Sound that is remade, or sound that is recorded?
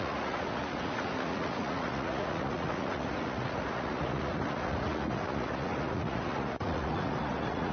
remade